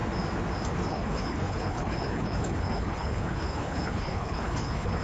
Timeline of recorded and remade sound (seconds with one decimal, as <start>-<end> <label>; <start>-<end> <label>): 0.0-0.9 recorded; 0.9-5.0 remade